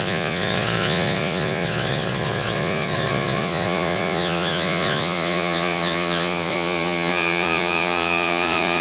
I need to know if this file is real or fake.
fake